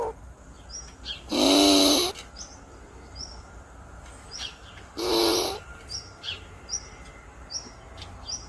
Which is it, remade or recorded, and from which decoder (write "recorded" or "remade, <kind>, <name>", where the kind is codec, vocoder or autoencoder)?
recorded